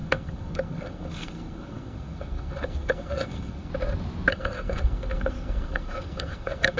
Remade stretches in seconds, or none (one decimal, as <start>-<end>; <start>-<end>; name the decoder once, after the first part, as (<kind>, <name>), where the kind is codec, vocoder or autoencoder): 0.0-3.7 (codec, SNAC); 4.3-6.8